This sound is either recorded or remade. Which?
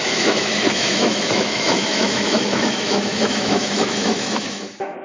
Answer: remade